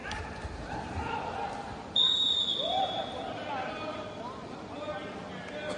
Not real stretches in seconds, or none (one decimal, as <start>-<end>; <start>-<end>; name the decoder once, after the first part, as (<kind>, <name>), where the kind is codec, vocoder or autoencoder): 0.0-5.0 (vocoder, BigVGAN v2)

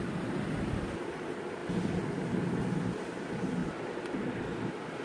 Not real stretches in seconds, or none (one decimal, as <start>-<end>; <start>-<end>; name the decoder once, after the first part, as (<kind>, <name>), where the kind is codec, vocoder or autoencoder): none